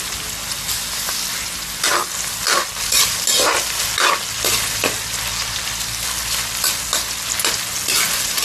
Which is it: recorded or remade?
recorded